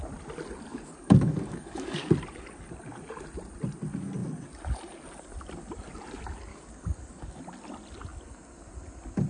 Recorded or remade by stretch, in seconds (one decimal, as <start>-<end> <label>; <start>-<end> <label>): 0.0-0.7 recorded; 0.7-2.1 remade; 2.1-6.5 recorded; 6.5-7.4 remade; 7.4-9.3 recorded